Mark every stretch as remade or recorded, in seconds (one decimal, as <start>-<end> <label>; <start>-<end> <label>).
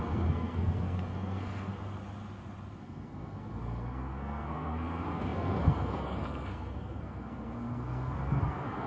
0.0-1.7 remade; 1.7-2.8 recorded; 2.8-8.9 remade